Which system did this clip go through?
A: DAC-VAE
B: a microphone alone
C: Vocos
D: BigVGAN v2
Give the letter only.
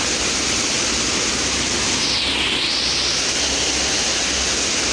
B